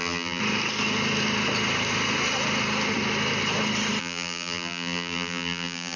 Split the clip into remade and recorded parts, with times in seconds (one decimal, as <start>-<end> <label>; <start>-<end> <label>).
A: 0.0-0.4 remade; 0.4-4.0 recorded; 4.0-6.0 remade